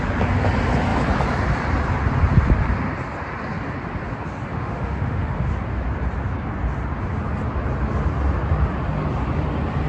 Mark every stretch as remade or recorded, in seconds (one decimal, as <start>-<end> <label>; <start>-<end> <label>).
0.0-4.5 recorded; 4.5-5.3 remade; 5.3-9.9 recorded